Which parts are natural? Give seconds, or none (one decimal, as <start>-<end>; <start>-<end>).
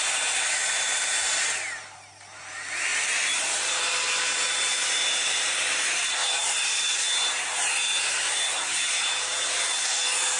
0.0-2.9; 3.8-6.2; 7.1-10.4